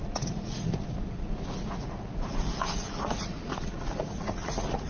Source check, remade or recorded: remade